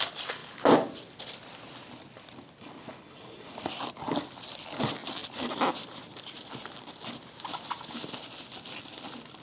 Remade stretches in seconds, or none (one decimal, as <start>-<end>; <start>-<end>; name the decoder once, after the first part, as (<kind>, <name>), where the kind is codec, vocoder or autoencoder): 5.2-6.2 (vocoder, BigVGAN v2)